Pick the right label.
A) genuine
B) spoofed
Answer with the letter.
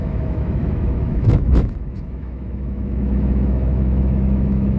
B